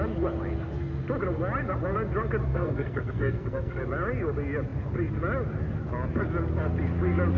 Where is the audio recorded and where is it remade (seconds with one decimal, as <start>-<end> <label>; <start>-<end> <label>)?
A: 0.0-2.5 recorded; 2.5-3.8 remade; 3.8-7.4 recorded